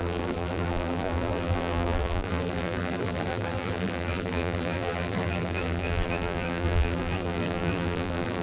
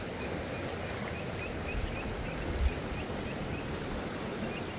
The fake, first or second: first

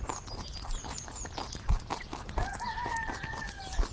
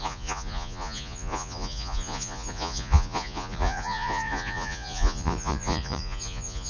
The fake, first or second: second